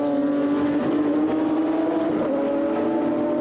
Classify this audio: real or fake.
real